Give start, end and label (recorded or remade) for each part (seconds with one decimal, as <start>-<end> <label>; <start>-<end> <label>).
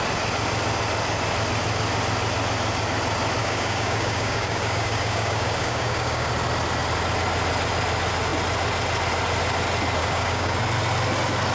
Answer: 0.0-3.4 recorded; 3.4-6.3 remade; 6.3-10.0 recorded; 10.0-10.6 remade; 10.6-11.5 recorded